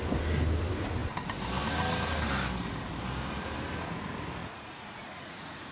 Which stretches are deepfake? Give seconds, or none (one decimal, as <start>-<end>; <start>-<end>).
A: 4.4-5.7